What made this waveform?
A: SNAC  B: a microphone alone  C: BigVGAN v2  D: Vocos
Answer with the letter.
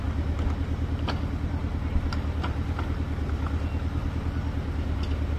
B